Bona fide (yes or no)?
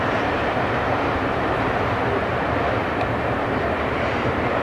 no